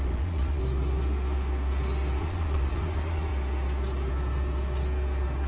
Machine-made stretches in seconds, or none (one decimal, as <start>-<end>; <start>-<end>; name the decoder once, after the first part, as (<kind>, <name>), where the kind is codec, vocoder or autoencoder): 0.0-0.6 (vocoder, Vocos); 2.2-3.3